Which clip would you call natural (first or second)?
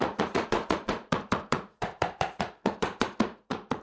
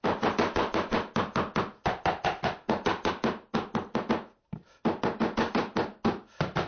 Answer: second